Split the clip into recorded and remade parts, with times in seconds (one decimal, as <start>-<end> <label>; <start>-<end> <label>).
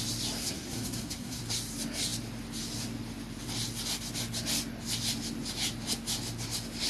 0.0-0.4 recorded; 0.4-1.4 remade; 1.4-6.9 recorded